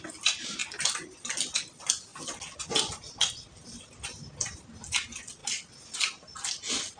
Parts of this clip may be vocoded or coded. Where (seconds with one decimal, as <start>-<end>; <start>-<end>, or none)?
none